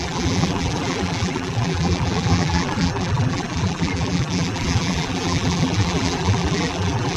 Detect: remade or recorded remade